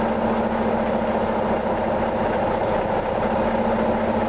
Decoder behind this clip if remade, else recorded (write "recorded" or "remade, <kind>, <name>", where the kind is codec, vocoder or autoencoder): recorded